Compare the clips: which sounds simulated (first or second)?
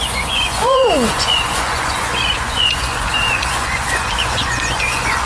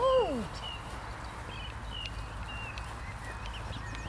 first